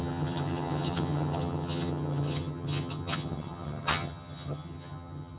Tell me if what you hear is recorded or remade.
remade